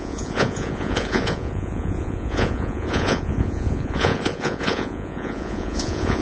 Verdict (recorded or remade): remade